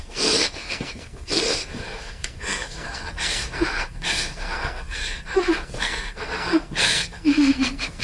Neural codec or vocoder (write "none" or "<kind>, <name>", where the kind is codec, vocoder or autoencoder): codec, SNAC